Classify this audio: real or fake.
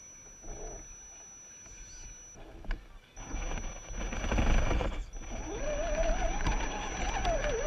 real